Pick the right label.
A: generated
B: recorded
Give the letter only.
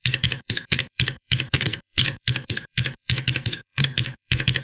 A